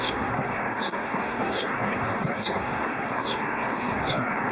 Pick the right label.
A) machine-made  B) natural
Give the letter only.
A